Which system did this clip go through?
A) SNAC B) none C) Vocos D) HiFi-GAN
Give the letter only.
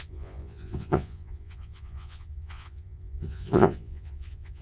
C